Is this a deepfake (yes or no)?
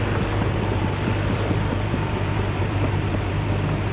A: yes